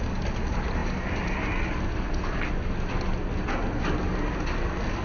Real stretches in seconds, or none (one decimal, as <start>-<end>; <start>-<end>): 0.0-5.0